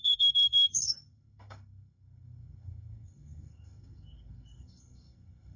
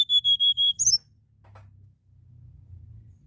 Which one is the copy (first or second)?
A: first